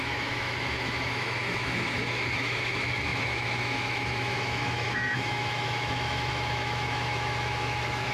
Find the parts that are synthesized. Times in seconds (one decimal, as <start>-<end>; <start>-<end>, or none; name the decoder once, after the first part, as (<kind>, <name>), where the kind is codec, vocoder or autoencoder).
0.0-8.1 (autoencoder, DAC-VAE)